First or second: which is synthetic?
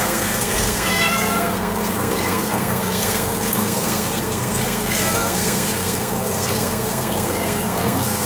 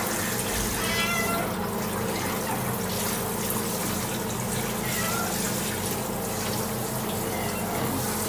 first